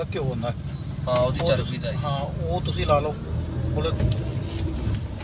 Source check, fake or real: real